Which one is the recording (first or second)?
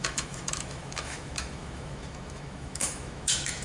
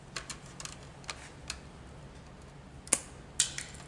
second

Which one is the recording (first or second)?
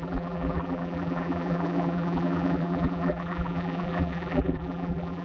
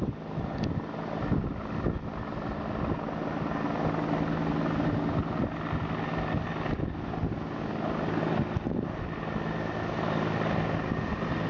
second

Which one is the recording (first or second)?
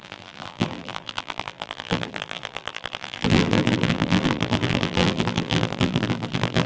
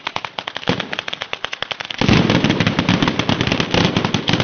second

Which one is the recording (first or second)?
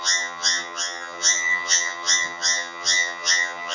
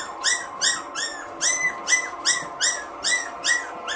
second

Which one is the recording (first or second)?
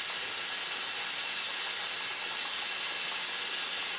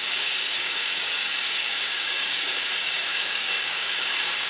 first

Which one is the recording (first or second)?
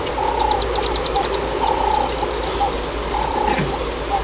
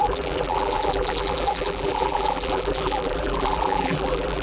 first